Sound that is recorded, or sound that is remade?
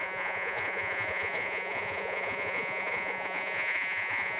remade